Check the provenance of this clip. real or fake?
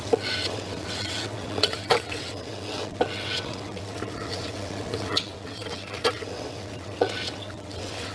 fake